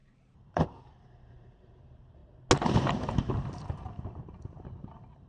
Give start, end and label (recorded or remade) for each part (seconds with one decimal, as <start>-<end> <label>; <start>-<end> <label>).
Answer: 0.0-2.2 remade; 2.2-2.7 recorded; 2.7-5.3 remade